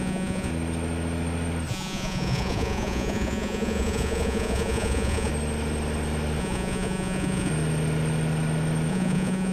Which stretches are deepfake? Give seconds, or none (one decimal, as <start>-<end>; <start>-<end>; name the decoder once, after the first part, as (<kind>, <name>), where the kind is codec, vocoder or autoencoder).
0.0-0.5 (vocoder, Vocos); 1.7-5.3; 6.4-7.5; 8.9-9.5